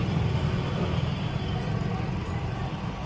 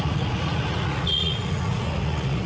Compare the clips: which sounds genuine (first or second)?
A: first